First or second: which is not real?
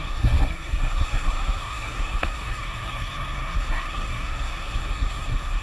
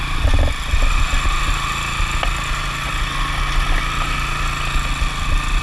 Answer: first